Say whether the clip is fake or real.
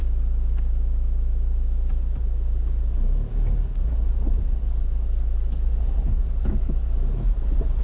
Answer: real